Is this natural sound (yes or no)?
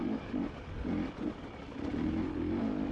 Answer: yes